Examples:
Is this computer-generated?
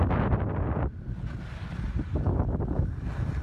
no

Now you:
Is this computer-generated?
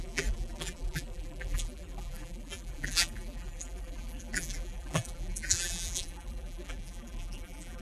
yes